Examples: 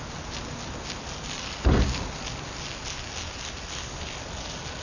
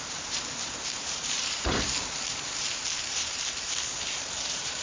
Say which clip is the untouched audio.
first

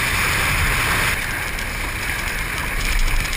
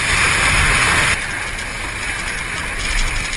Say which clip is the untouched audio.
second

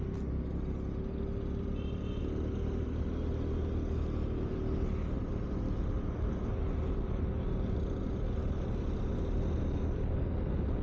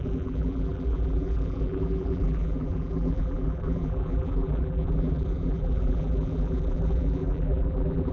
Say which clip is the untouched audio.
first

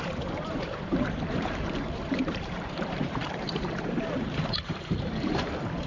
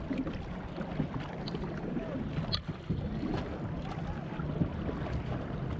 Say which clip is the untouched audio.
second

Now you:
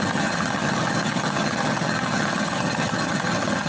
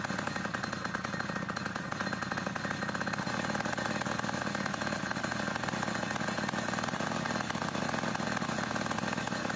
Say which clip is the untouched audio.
second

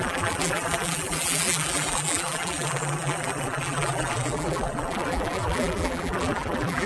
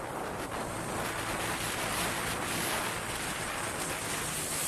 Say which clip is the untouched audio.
second